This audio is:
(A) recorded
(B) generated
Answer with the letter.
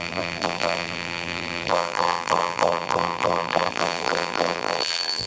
B